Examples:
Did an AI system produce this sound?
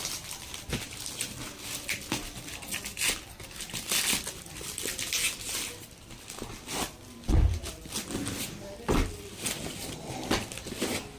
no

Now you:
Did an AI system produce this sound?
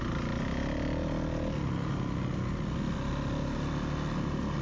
no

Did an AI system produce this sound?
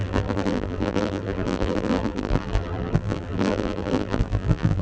yes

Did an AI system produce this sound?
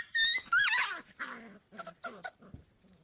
yes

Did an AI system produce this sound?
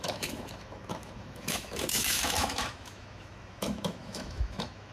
yes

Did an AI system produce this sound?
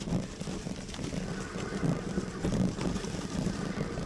no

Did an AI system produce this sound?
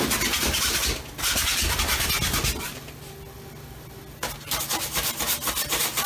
no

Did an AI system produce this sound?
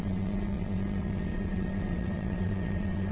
yes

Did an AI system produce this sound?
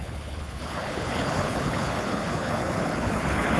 yes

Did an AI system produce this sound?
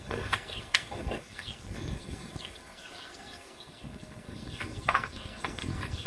yes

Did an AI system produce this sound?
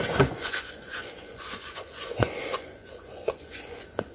yes